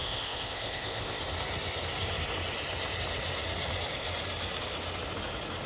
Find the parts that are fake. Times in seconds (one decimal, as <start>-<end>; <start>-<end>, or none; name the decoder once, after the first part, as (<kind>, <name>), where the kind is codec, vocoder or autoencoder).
0.0-1.2 (codec, ZipCodec)